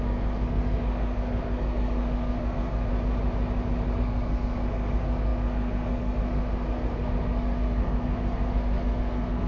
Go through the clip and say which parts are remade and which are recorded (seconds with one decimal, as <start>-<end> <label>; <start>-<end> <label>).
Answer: 0.0-2.9 remade; 2.9-4.0 recorded; 4.0-9.5 remade